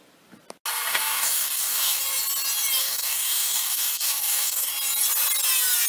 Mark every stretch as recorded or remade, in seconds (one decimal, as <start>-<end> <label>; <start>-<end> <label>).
0.0-0.9 recorded; 0.9-2.0 remade; 2.0-2.8 recorded; 2.8-4.7 remade; 4.7-5.9 recorded